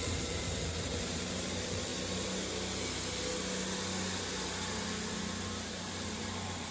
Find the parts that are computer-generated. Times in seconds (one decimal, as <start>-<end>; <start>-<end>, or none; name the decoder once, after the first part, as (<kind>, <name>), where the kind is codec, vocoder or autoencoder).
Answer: 0.0-1.9 (vocoder, BigVGAN v2); 5.8-6.7